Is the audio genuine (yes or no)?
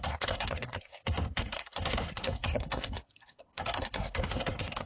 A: no